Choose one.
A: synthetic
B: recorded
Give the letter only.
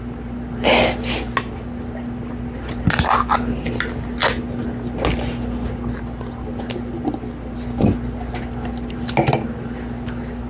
B